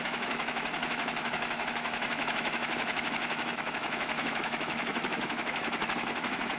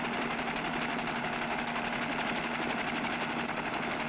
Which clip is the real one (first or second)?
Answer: second